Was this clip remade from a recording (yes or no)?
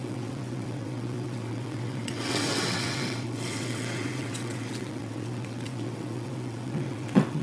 yes